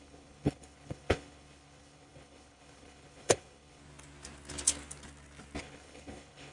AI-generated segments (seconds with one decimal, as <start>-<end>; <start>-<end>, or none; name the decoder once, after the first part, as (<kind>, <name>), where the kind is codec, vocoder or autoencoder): 0.0-3.8 (codec, HILCodec); 5.6-6.5